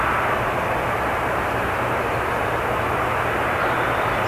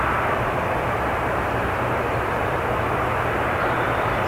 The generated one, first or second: second